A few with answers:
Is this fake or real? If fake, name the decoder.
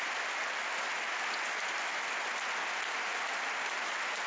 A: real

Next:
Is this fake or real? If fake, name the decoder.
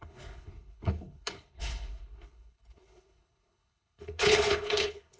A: fake, codec, HILCodec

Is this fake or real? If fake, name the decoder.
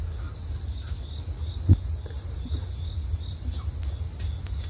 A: real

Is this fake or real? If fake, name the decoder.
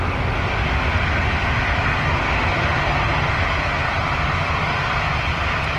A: real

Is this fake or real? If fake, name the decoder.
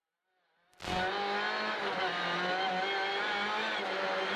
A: real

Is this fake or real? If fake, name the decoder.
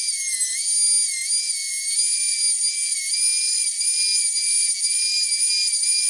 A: real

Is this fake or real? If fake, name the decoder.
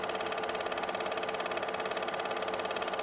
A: real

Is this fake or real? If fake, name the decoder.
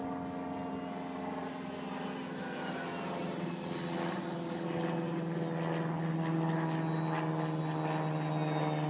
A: real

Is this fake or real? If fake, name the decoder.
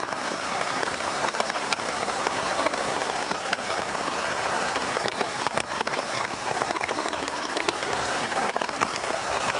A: fake, codec, SNAC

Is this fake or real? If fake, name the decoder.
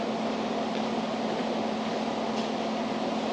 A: real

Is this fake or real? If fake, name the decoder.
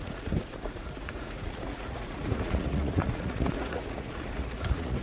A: fake, vocoder, Vocos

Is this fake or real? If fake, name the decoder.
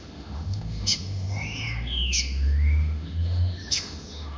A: fake, autoencoder, DAC-VAE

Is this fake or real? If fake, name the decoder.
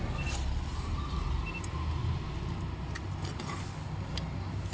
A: real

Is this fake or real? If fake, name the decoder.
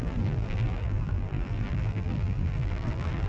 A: fake, vocoder, BigVGAN v2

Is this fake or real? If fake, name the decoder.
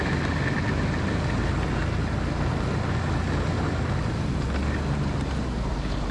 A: real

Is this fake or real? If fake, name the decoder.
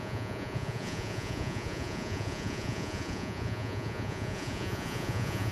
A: fake, vocoder, Vocos